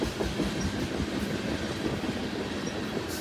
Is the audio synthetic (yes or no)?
yes